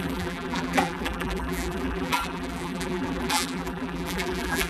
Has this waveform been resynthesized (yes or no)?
yes